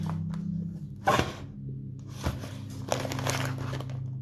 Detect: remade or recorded recorded